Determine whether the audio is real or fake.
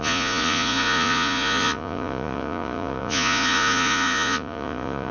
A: fake